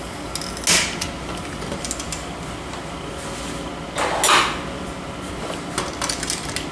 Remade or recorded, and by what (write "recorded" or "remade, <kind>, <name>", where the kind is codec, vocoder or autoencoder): recorded